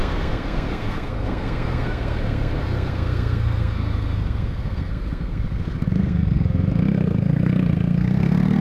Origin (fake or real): fake